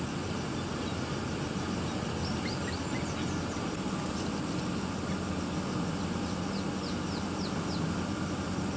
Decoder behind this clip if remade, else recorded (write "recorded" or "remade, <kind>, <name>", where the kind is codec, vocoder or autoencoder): recorded